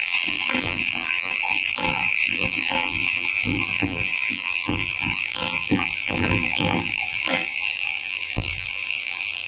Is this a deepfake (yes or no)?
yes